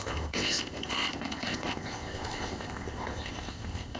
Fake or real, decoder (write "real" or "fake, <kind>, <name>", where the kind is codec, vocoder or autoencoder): fake, codec, ZipCodec